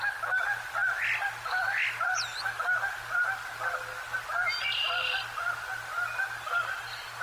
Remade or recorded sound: recorded